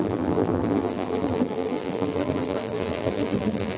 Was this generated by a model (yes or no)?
yes